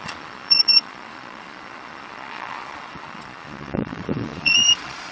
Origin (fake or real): fake